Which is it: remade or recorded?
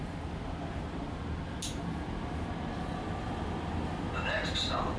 recorded